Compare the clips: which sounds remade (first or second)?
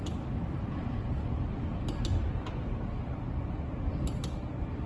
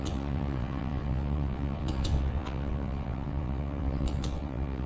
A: second